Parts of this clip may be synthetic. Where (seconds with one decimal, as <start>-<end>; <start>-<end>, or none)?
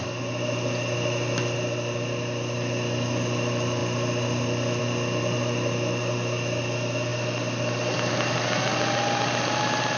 none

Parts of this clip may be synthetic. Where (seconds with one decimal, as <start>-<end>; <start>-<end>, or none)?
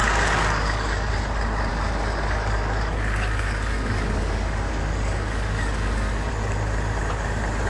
0.0-1.1; 1.7-6.3